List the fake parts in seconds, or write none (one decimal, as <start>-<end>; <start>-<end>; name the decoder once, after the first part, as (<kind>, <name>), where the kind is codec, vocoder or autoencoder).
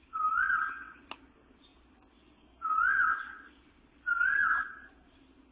none